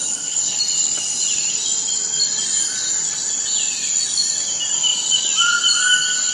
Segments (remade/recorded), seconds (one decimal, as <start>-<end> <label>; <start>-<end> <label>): 0.0-0.6 remade; 0.6-6.3 recorded